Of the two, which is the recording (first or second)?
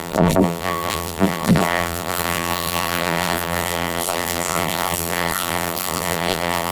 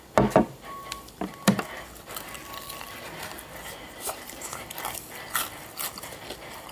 second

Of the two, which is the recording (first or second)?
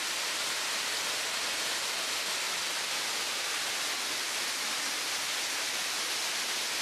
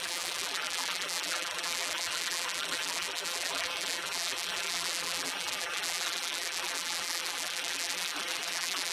first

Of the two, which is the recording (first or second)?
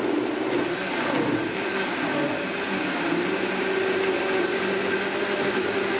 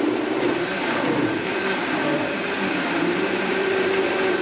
first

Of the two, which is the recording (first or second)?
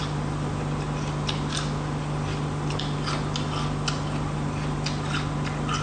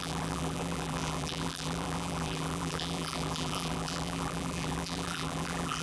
first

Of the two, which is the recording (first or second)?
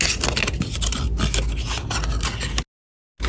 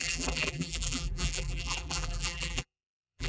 first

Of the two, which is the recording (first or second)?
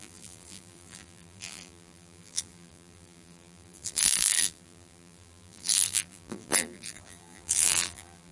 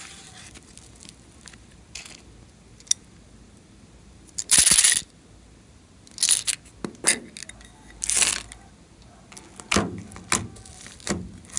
second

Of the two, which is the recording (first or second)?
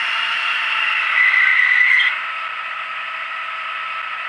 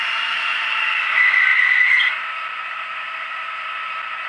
second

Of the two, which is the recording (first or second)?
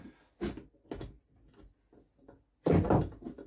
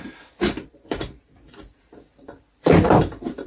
first